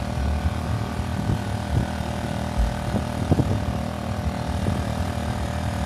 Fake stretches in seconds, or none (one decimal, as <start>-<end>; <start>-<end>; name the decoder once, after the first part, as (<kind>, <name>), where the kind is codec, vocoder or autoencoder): none